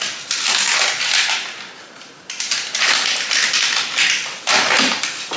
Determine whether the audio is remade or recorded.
recorded